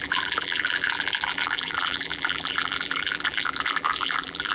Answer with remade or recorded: remade